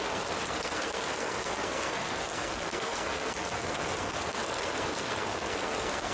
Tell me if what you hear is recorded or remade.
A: remade